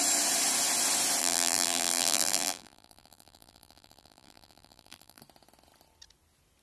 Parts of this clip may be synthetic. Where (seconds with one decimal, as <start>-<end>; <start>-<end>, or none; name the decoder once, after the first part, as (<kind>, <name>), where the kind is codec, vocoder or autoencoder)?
1.2-5.2 (vocoder, BigVGAN v2)